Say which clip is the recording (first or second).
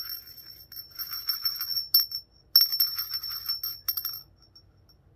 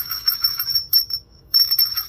first